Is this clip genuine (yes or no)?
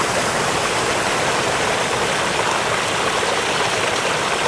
yes